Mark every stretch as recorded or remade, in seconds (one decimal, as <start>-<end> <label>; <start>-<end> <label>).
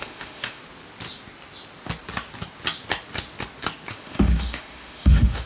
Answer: 0.0-0.6 remade; 0.6-3.9 recorded; 3.9-5.5 remade